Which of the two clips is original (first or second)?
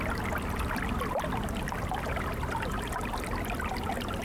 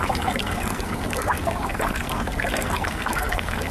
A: first